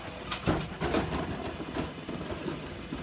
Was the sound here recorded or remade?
recorded